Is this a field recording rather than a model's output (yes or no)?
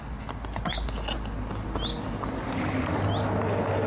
yes